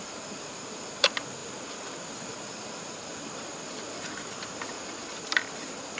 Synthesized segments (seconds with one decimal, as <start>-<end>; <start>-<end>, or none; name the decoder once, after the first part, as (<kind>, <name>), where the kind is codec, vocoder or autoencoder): none